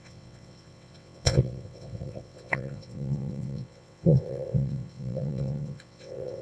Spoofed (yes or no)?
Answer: yes